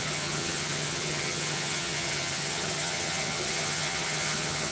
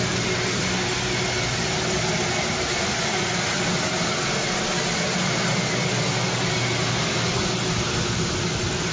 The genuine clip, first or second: second